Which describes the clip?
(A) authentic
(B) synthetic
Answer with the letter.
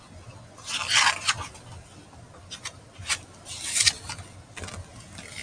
A